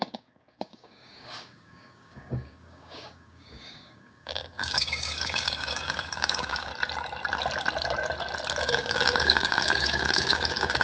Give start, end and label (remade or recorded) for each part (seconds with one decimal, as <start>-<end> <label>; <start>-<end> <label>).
0.0-6.7 remade; 6.7-8.6 recorded; 8.6-10.8 remade